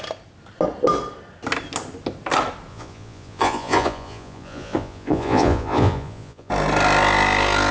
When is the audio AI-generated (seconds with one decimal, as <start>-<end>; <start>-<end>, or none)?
2.7-6.5